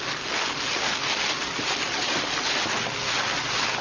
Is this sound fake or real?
real